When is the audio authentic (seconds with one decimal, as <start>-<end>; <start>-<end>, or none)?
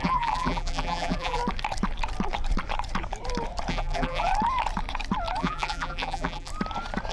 1.4-3.7; 4.3-5.4; 6.5-7.1